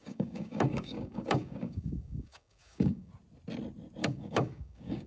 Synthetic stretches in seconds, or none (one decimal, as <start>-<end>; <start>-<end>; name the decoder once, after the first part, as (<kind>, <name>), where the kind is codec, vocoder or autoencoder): 0.0-3.1 (codec, DAC); 4.0-5.1